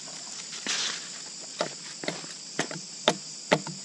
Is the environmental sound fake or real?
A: real